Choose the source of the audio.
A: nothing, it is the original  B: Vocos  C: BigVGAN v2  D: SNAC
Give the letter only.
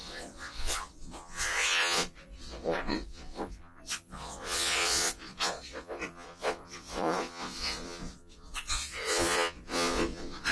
B